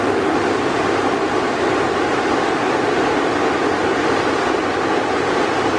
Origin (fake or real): real